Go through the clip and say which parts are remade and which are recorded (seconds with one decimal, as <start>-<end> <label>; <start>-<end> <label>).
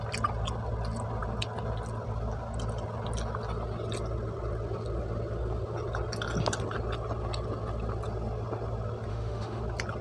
0.0-9.1 recorded; 9.1-9.6 remade; 9.6-10.0 recorded